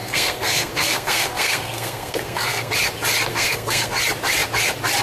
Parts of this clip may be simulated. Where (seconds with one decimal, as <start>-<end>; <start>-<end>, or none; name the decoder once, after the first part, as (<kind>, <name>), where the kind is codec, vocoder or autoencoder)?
0.0-2.7 (codec, SNAC); 3.3-3.9